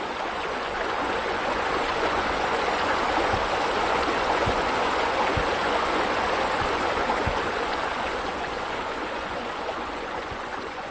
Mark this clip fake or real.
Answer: fake